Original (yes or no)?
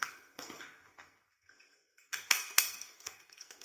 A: no